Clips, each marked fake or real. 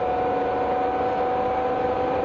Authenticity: real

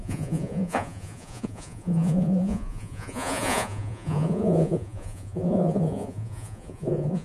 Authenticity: fake